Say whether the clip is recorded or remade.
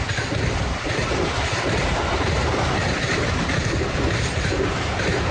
recorded